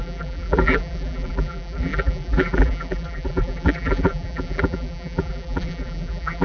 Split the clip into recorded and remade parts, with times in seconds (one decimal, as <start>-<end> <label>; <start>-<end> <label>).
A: 0.0-6.4 remade